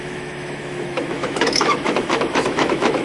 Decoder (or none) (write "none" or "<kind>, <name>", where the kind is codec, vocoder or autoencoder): autoencoder, DAC-VAE